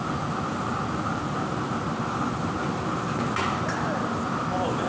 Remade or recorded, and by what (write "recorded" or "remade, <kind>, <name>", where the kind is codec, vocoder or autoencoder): recorded